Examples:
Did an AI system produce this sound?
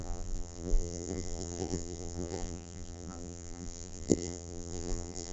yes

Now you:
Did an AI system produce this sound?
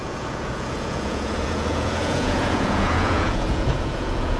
yes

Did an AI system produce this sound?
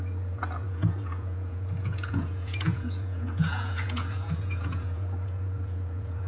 yes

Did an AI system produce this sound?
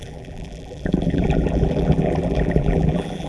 yes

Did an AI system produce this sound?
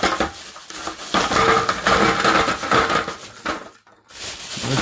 no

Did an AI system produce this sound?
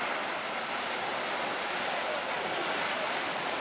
yes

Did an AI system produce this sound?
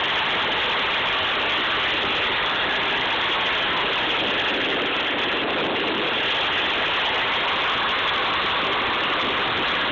no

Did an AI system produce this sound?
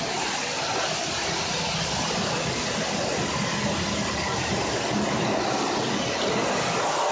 no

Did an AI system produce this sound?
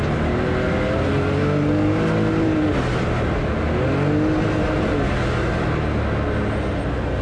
no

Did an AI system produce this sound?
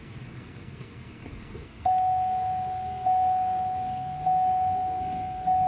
yes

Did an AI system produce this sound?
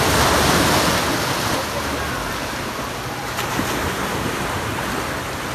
no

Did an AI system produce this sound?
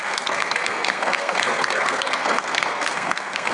yes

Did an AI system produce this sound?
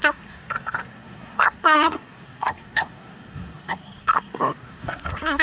yes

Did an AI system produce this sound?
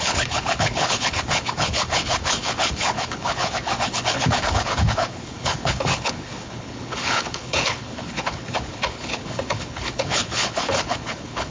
yes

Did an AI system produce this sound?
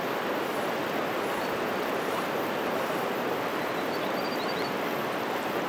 no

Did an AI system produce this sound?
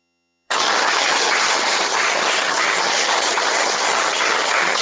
yes